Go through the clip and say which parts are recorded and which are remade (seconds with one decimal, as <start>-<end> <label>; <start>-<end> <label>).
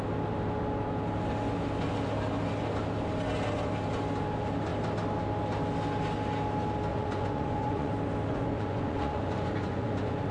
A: 0.0-6.9 recorded; 6.9-7.9 remade; 7.9-8.3 recorded; 8.3-10.3 remade